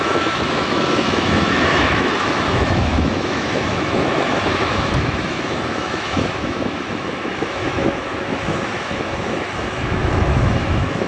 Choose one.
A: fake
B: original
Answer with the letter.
A